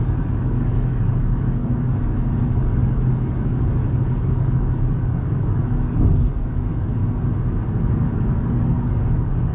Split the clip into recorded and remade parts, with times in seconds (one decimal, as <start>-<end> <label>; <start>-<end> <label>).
0.0-7.0 remade; 7.0-7.6 recorded; 7.6-9.5 remade